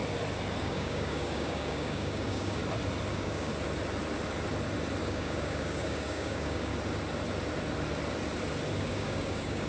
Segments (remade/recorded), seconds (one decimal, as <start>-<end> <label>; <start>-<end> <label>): 0.0-0.6 recorded; 0.6-2.6 remade; 2.6-3.1 recorded; 3.1-3.5 remade; 3.5-5.0 recorded; 5.0-6.7 remade; 6.7-8.8 recorded; 8.8-9.7 remade